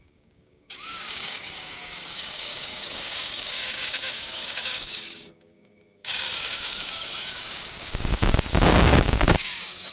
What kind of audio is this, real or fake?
fake